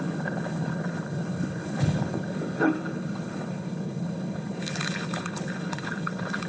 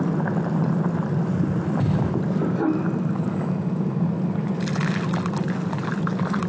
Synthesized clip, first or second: first